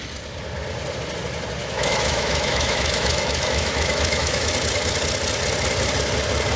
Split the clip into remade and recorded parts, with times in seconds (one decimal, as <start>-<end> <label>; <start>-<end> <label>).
0.0-1.6 recorded; 1.6-4.5 remade; 4.5-6.6 recorded